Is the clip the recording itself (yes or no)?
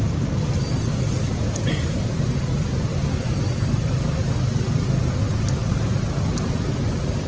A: yes